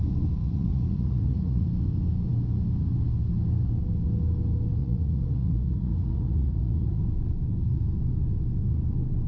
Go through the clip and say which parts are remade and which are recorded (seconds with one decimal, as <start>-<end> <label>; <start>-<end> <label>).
0.0-0.4 recorded; 0.4-1.7 remade; 1.7-4.8 recorded; 4.8-7.0 remade; 7.0-9.3 recorded